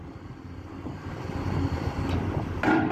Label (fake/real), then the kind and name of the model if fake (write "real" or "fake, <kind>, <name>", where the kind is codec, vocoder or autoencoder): fake, vocoder, BigVGAN v2